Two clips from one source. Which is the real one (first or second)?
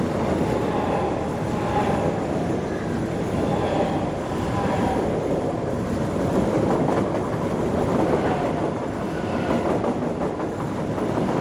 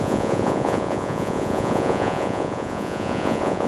first